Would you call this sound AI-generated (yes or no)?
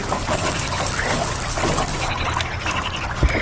no